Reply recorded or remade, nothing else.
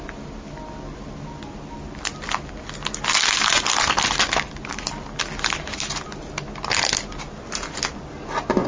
recorded